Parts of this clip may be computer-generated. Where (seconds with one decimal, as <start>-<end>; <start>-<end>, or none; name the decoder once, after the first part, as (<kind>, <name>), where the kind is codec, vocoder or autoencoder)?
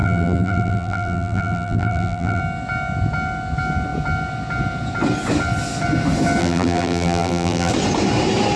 0.0-2.4 (vocoder, BigVGAN v2); 6.4-7.7